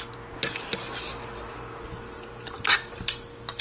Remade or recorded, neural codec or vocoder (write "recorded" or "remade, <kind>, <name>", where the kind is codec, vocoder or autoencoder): recorded